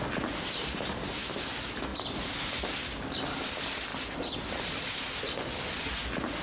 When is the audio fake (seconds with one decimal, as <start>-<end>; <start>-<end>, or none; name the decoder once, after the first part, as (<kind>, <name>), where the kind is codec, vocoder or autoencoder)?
none